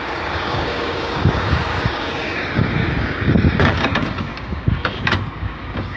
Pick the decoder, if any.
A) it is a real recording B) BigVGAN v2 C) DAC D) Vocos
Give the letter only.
C